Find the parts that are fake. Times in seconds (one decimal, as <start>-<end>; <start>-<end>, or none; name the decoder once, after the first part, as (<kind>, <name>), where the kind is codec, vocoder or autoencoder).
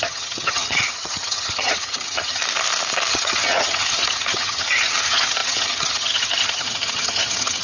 0.0-2.4 (vocoder, HiFi-GAN); 3.1-7.6